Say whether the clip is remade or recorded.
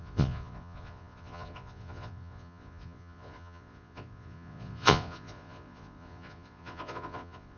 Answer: remade